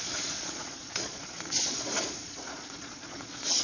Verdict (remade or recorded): remade